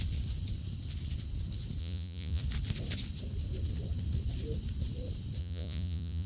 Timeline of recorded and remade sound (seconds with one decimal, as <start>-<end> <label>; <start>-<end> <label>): 0.0-1.8 recorded; 1.8-2.4 remade; 2.4-5.4 recorded; 5.4-6.3 remade